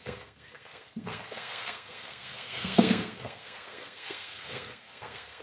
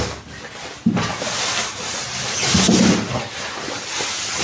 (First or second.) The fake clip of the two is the first